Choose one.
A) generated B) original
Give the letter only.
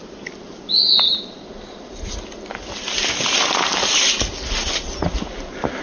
B